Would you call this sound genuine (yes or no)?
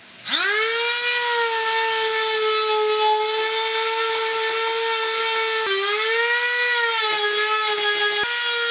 yes